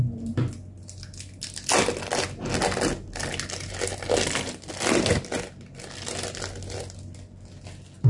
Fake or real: real